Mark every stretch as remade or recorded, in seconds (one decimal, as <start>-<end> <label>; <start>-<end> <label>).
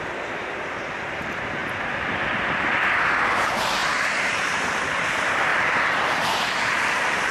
0.0-3.8 remade; 3.8-4.3 recorded; 4.3-7.3 remade